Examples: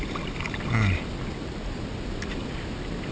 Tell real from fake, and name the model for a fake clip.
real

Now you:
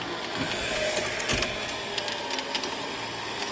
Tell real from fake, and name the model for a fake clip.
real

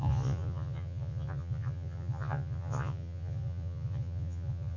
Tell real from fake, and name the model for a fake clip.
fake, vocoder, Vocos